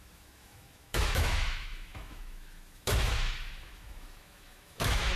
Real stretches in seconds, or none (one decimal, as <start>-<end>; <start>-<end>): none